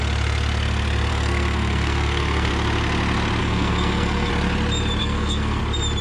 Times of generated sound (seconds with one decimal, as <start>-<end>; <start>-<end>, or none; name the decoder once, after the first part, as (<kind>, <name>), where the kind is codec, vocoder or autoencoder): 1.1-2.5 (codec, SNAC); 3.4-4.3; 5.0-5.6